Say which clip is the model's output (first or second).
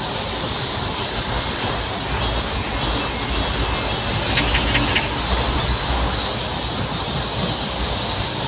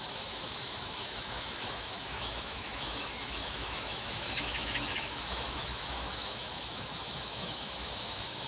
second